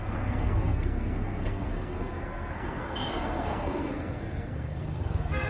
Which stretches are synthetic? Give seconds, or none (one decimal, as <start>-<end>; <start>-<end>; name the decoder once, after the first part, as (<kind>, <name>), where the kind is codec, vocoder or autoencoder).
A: 0.0-5.5 (codec, SNAC)